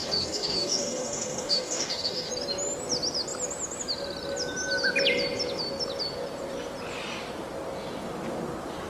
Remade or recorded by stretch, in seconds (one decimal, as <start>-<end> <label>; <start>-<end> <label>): 0.0-2.3 remade; 2.3-8.9 recorded